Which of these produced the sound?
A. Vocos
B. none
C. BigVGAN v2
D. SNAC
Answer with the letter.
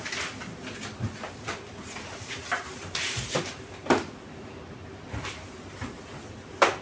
B